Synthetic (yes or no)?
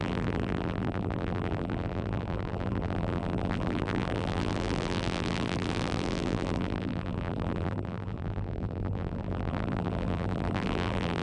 yes